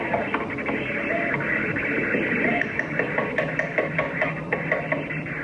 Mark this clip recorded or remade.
recorded